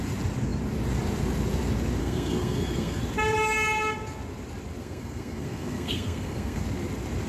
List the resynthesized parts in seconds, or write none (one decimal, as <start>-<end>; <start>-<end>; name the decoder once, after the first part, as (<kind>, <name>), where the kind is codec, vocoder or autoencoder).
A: 2.0-3.0 (codec, SNAC); 4.8-6.6